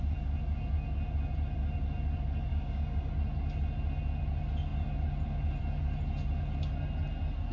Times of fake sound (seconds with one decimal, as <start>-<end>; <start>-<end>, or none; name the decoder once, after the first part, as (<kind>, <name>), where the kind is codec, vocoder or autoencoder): 2.5-3.1 (codec, DAC)